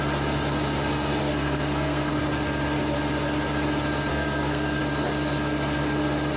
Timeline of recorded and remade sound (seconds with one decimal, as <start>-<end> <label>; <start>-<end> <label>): 0.0-1.2 recorded; 1.2-2.1 remade; 2.1-4.1 recorded; 4.1-4.8 remade; 4.8-6.4 recorded